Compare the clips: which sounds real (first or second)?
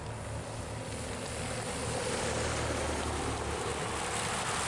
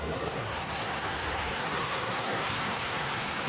first